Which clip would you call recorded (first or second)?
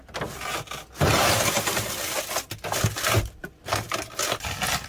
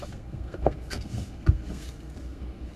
first